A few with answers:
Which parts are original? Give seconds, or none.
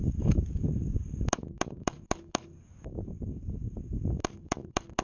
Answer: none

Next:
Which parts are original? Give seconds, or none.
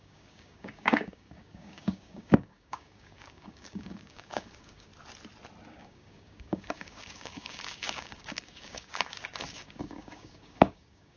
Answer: 4.9-5.7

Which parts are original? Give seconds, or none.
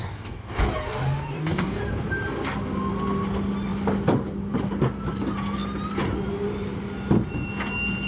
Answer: 0.7-1.3; 1.8-8.1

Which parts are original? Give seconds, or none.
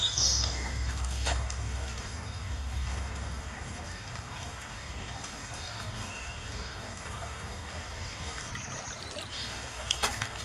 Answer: 8.5-9.3